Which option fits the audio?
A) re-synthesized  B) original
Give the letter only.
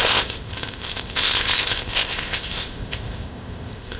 A